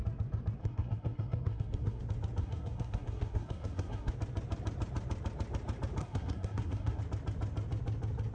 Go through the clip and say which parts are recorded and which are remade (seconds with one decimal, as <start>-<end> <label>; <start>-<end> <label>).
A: 0.0-0.6 recorded; 0.6-2.0 remade; 2.0-2.4 recorded; 2.4-4.1 remade; 4.1-6.0 recorded; 6.0-7.0 remade; 7.0-8.3 recorded